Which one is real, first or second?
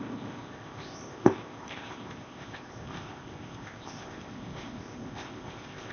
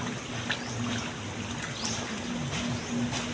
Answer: second